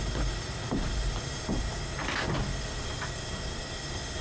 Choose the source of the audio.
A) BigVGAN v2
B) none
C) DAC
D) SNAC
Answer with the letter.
B